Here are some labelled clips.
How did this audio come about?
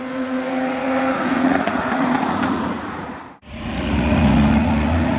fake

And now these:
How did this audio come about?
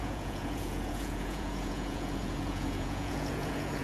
fake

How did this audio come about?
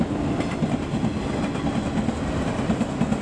real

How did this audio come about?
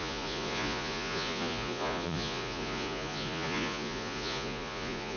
fake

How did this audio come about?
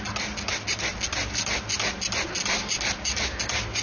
real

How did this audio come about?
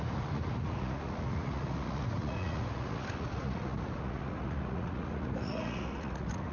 fake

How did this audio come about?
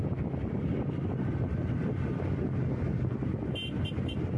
real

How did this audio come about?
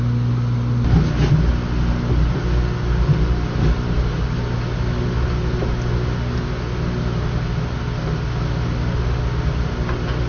real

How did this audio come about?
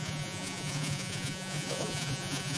fake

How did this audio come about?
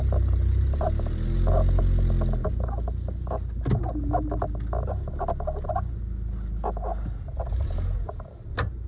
real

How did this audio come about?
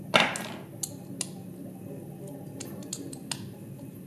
real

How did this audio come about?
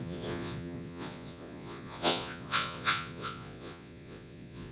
fake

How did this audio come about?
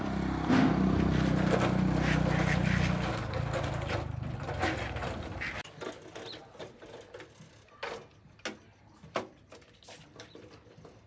real